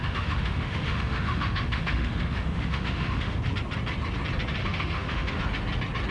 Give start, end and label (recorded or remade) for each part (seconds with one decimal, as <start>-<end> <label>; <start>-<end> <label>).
0.0-3.4 remade; 3.4-4.6 recorded; 4.6-5.4 remade; 5.4-6.1 recorded